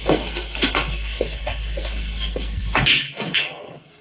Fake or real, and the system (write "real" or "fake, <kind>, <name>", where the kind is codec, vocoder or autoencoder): fake, codec, SNAC